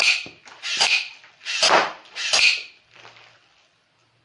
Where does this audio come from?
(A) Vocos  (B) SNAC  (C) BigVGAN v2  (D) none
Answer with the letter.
D